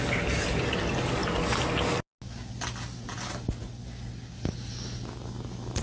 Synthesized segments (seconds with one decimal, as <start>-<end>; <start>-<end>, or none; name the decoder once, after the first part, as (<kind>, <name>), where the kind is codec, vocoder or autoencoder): none